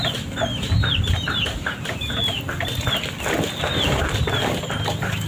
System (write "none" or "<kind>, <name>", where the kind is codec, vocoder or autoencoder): none